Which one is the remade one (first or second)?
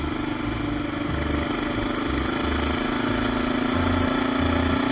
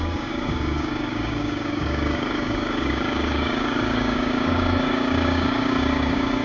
second